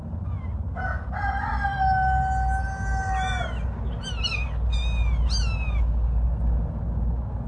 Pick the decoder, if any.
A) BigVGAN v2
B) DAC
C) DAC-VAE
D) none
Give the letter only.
D